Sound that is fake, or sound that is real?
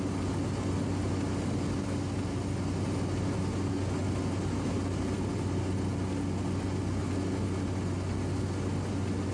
real